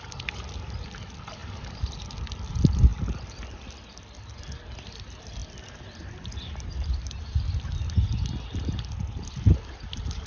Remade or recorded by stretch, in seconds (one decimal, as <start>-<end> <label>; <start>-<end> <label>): 0.0-1.4 recorded; 1.4-2.0 remade; 2.0-10.3 recorded